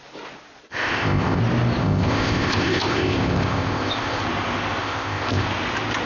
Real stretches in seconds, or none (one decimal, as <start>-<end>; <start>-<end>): 0.0-0.7; 1.4-1.8; 4.2-4.8; 5.5-6.1